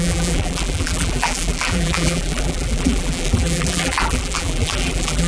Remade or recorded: remade